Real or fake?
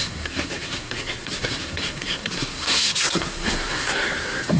fake